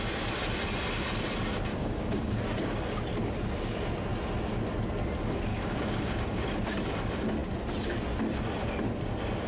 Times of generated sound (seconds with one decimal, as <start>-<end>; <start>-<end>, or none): 1.7-2.4; 5.5-6.4